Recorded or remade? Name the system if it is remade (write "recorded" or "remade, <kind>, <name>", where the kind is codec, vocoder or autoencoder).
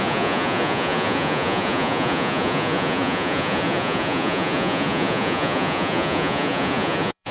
remade, vocoder, Vocos